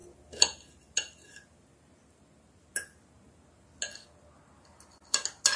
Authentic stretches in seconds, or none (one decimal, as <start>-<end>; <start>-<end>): 0.0-5.6